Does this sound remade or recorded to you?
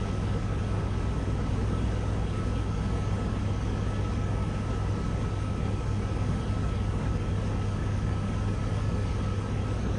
remade